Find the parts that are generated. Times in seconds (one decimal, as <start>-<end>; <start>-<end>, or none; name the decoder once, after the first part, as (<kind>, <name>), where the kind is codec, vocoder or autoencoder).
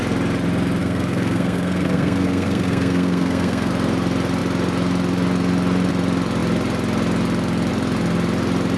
0.8-3.7 (codec, SNAC)